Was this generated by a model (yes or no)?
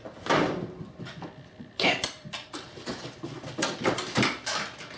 no